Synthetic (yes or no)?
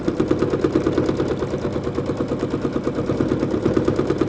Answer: no